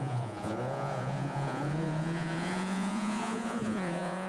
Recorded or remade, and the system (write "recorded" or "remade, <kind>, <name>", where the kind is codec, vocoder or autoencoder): remade, vocoder, Vocos